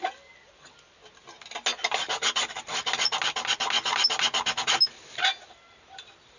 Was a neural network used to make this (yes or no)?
no